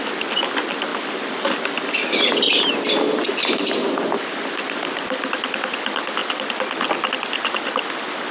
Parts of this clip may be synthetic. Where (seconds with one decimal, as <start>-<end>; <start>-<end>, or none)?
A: none